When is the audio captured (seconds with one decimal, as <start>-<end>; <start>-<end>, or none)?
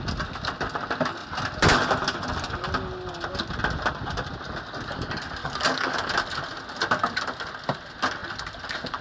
0.0-5.4; 6.1-9.0